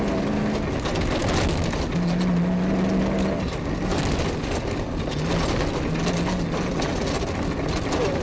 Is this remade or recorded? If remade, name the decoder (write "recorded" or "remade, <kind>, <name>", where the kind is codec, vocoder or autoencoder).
recorded